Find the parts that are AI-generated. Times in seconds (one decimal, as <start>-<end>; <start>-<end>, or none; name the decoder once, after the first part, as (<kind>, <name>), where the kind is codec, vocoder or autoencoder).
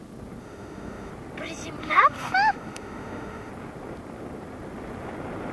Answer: 0.4-1.1 (autoencoder, DAC-VAE); 1.8-3.5